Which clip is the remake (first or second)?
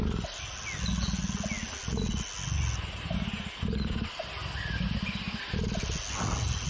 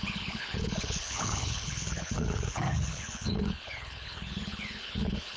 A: second